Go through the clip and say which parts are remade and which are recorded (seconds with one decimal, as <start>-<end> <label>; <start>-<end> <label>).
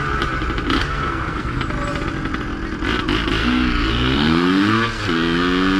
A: 0.0-0.8 recorded; 0.8-1.6 remade; 1.6-3.4 recorded; 3.4-5.0 remade; 5.0-5.8 recorded